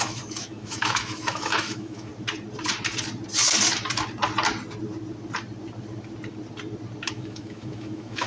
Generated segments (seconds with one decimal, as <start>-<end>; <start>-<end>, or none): 0.0-2.1; 7.1-8.3